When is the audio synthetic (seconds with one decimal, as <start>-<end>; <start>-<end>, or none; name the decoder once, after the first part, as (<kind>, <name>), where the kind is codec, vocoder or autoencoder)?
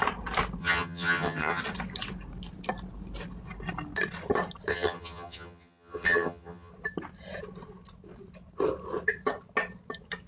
0.6-1.6 (vocoder, HiFi-GAN); 4.7-6.7